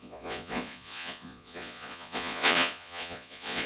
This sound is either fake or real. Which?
fake